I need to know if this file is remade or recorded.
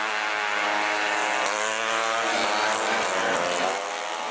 recorded